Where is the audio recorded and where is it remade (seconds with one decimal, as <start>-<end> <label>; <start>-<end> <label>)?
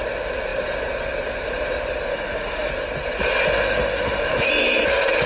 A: 0.0-2.1 recorded; 2.1-2.7 remade; 2.7-3.5 recorded; 3.5-4.5 remade; 4.5-5.3 recorded